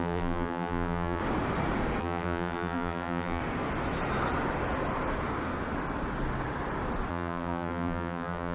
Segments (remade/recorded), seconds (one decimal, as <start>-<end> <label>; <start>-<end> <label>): 0.0-1.2 remade; 1.2-2.0 recorded; 2.0-3.4 remade; 3.4-7.1 recorded; 7.1-8.5 remade